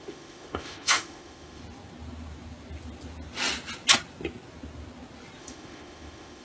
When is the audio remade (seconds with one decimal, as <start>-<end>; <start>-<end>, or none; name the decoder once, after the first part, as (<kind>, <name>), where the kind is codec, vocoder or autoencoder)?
0.0-1.6 (autoencoder, DAC-VAE); 5.4-6.4